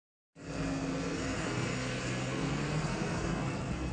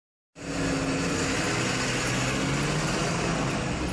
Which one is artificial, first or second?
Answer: first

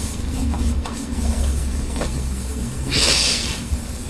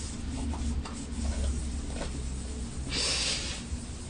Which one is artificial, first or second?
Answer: first